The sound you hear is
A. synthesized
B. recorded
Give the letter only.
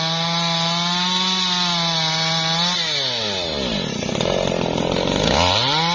B